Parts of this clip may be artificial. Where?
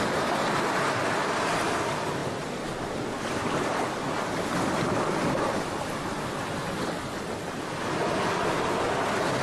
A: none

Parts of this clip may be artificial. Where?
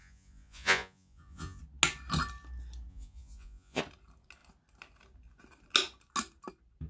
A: 0.0-1.6; 2.9-3.8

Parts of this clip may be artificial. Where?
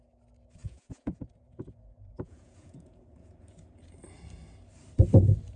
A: 0.6-3.4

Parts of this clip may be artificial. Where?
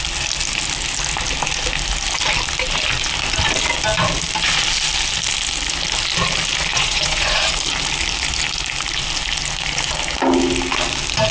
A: 6.7-7.5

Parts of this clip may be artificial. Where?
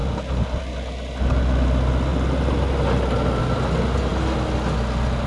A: none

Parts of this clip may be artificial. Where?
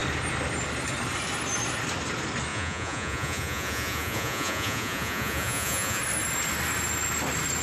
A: 2.5-6.0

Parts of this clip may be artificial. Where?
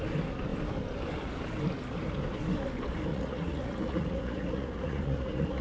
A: 3.1-5.6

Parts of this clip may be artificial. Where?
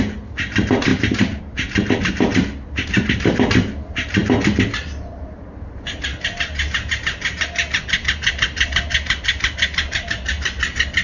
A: none